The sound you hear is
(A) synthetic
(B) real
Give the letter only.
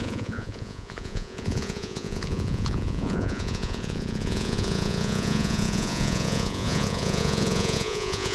A